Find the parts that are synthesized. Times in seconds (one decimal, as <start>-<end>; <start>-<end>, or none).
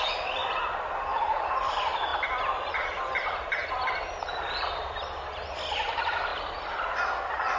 0.0-0.4; 1.2-7.6